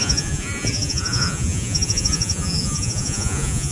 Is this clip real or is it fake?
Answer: fake